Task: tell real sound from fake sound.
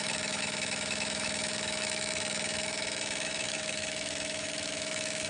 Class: fake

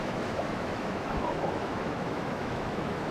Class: fake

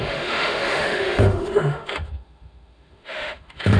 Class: fake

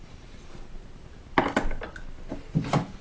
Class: real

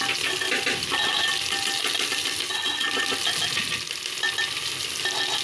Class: real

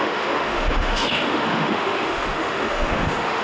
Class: fake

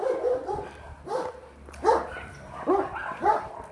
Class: real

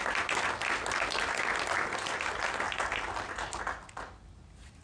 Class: real